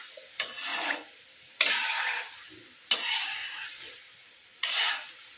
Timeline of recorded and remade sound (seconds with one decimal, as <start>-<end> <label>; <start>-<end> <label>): 0.0-3.4 recorded; 3.4-4.9 remade; 4.9-5.4 recorded